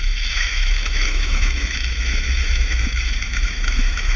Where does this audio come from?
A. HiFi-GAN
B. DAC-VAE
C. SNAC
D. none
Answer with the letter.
B